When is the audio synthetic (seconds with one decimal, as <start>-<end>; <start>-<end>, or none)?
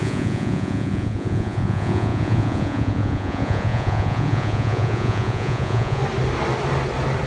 0.0-6.0